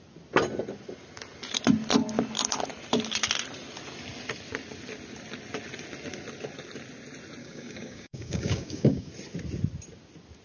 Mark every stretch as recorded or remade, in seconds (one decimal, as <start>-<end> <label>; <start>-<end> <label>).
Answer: 0.0-7.4 recorded; 7.4-9.1 remade; 9.1-10.4 recorded